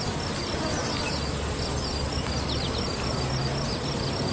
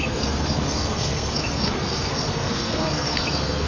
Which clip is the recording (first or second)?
first